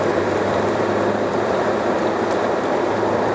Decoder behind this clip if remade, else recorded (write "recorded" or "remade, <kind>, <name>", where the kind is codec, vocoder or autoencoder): remade, vocoder, BigVGAN v2